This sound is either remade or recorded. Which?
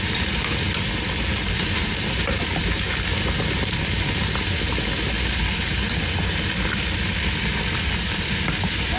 recorded